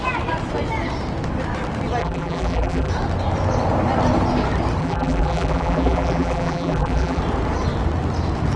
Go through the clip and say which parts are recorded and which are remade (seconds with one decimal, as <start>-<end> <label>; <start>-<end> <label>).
0.0-2.0 recorded; 2.0-2.9 remade; 2.9-4.8 recorded; 4.8-7.2 remade; 7.2-8.6 recorded